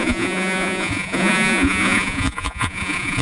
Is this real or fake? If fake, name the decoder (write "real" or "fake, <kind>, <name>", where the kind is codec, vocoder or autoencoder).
fake, vocoder, Vocos